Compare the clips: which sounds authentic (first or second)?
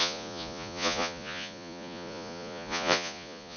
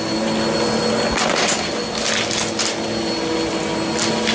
second